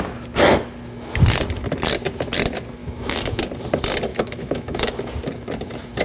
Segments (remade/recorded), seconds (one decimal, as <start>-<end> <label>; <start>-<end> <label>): 0.0-2.8 recorded; 2.8-3.4 remade; 3.4-4.1 recorded; 4.1-4.9 remade; 4.9-6.0 recorded